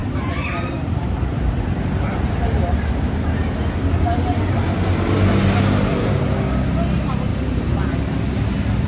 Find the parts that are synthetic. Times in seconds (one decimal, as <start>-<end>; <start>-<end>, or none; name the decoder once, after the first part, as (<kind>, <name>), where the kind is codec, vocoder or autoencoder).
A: 0.0-4.5 (vocoder, BigVGAN v2); 7.3-8.2